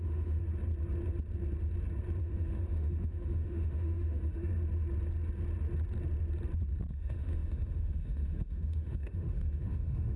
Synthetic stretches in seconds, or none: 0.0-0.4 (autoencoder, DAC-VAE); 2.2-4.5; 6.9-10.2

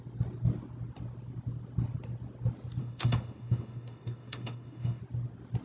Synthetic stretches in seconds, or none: 2.8-5.0 (autoencoder, DAC-VAE)